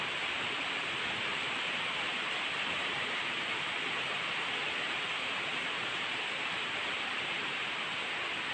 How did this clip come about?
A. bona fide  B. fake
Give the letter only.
B